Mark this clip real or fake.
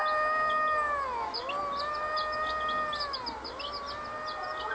real